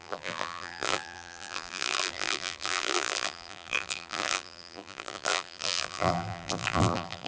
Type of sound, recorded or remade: remade